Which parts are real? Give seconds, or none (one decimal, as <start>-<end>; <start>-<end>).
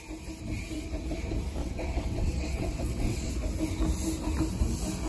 0.0-1.6; 3.3-5.1